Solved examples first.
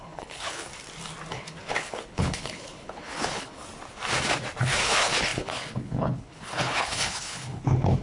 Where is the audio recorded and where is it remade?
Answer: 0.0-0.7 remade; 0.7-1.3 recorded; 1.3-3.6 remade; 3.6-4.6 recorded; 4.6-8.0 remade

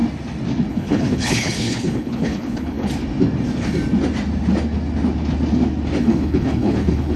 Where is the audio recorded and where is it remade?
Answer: 0.0-0.7 recorded; 0.7-2.9 remade; 2.9-6.0 recorded; 6.0-7.2 remade

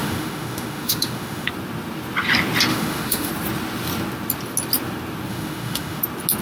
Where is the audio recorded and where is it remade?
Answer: 0.0-1.5 remade; 1.5-2.7 recorded; 2.7-3.3 remade; 3.3-5.3 recorded; 5.3-6.0 remade; 6.0-6.4 recorded

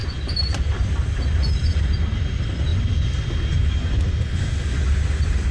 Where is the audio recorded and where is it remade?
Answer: 0.0-5.5 recorded

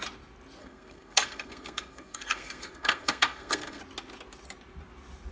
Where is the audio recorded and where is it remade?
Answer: 0.0-0.6 recorded; 0.6-3.8 remade; 3.8-5.3 recorded